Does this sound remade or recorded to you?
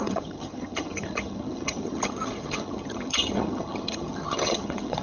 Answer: remade